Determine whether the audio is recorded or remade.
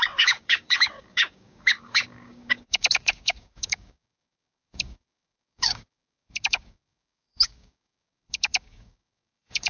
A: remade